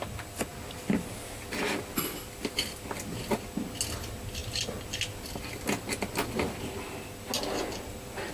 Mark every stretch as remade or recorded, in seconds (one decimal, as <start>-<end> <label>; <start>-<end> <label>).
0.0-8.3 recorded